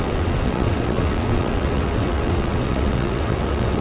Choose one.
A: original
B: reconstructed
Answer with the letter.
B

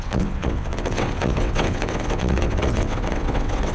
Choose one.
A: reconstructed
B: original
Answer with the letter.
A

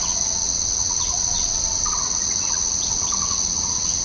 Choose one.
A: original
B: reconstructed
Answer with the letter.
B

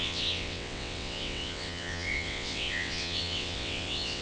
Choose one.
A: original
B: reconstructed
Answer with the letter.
B